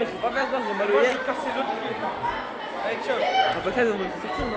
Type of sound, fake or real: real